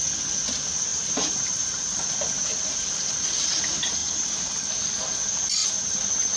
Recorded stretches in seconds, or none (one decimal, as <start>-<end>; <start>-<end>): 0.0-0.9; 2.0-4.0; 4.7-6.4